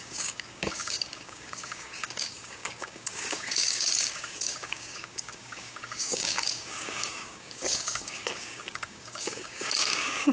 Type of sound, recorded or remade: remade